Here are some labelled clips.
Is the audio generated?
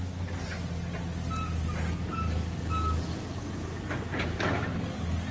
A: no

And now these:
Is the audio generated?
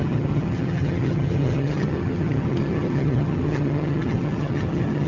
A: yes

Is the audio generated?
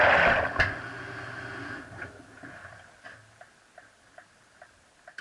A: no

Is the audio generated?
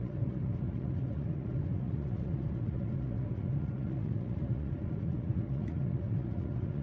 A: yes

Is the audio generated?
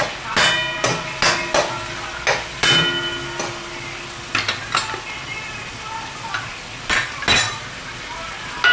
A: no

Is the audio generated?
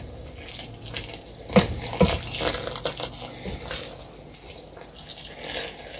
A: no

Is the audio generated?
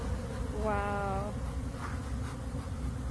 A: no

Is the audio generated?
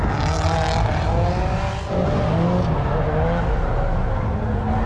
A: no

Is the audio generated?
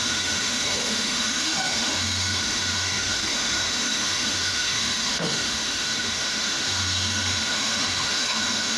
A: yes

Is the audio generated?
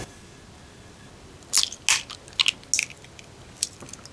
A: no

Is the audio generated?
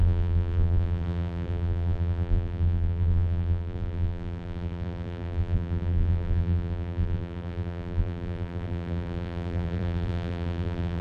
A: yes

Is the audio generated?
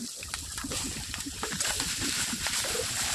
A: no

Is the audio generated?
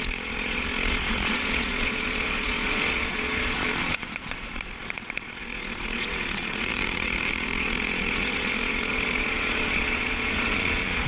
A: yes